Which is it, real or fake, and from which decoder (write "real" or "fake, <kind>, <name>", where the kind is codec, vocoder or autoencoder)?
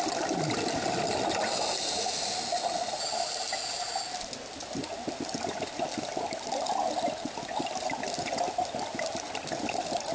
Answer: real